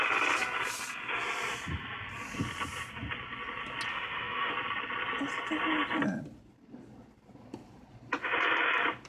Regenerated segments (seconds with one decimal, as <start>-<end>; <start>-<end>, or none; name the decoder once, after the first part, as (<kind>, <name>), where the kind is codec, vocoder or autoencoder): 3.9-4.5 (autoencoder, DAC-VAE)